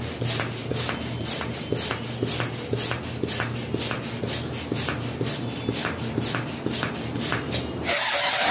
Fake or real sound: real